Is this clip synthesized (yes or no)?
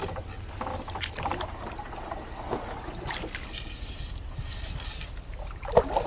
no